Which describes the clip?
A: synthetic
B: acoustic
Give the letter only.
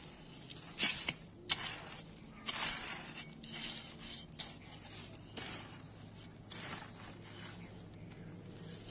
B